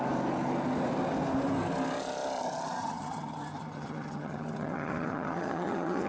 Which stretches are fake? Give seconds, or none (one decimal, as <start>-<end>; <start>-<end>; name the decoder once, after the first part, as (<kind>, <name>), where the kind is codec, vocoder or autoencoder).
2.8-6.1 (vocoder, HiFi-GAN)